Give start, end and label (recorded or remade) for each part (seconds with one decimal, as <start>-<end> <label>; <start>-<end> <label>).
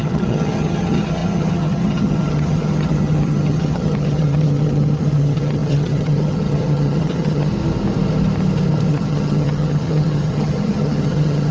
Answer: 0.0-7.5 remade; 7.5-8.9 recorded; 8.9-11.5 remade